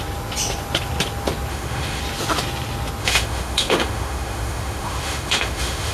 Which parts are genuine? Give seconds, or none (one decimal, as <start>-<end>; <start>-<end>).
0.0-1.5; 2.0-3.0